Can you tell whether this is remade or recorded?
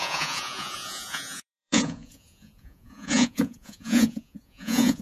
remade